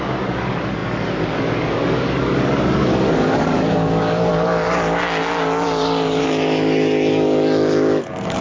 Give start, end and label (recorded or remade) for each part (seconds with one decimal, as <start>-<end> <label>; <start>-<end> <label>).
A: 0.0-8.4 remade